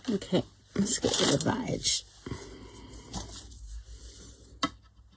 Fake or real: real